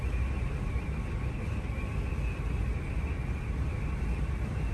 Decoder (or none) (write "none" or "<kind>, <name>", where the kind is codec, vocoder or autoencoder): none